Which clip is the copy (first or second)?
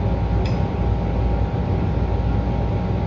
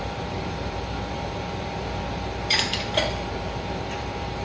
second